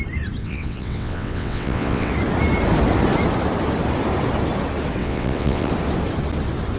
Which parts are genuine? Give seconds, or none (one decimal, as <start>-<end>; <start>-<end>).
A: 0.0-0.4; 2.1-5.0; 5.7-6.8